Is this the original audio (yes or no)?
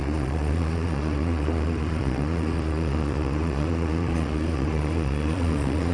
no